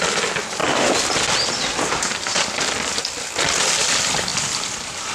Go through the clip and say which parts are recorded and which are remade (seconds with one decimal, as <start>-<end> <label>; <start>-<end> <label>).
0.0-4.3 recorded; 4.3-5.1 remade